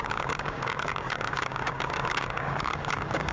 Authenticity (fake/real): fake